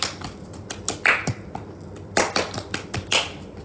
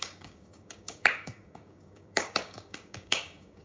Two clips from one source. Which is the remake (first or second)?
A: second